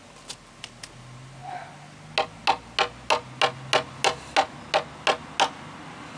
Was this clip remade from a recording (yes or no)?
no